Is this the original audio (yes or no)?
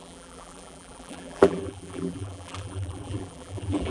no